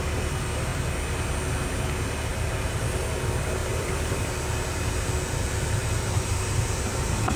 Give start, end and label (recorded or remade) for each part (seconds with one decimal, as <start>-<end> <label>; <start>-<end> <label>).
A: 0.0-2.3 recorded; 2.3-3.0 remade; 3.0-3.6 recorded; 3.6-4.3 remade; 4.3-5.8 recorded; 5.8-7.4 remade